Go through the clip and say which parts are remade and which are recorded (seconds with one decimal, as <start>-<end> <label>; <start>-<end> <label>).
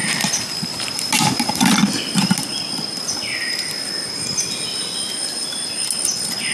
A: 0.0-6.5 recorded